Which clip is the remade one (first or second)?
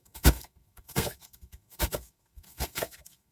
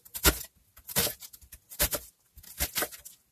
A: first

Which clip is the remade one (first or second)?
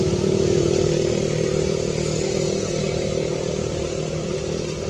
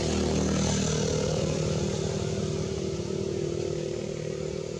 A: first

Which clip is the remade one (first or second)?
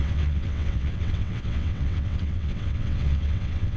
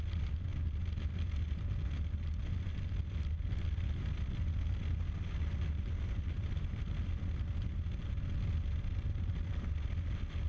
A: first